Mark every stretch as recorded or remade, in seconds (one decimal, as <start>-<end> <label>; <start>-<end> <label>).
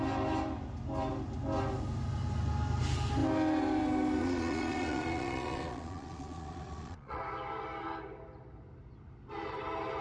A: 0.0-4.2 recorded; 4.2-7.2 remade; 7.2-10.0 recorded